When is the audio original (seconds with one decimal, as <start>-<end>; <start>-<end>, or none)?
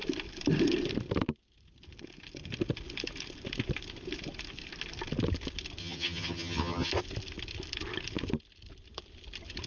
0.0-5.8; 6.9-9.7